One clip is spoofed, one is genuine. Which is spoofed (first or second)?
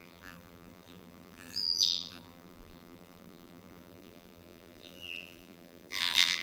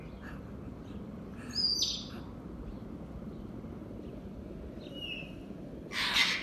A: first